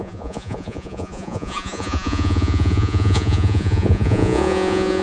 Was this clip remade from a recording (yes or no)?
yes